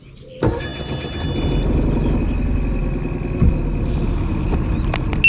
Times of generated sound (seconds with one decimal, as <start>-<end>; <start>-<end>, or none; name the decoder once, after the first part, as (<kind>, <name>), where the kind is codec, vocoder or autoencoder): none